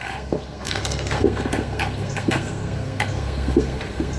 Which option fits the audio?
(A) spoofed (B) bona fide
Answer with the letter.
A